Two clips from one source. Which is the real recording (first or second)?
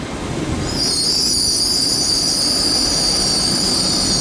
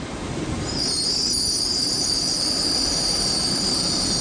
first